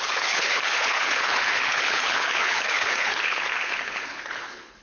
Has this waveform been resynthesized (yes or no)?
yes